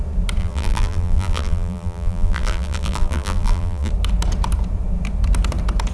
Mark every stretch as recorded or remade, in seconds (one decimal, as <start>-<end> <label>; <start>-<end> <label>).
0.0-0.4 recorded; 0.4-3.9 remade; 3.9-5.9 recorded